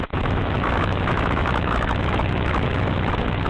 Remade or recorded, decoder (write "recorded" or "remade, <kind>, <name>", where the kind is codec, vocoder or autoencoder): remade, autoencoder, DAC-VAE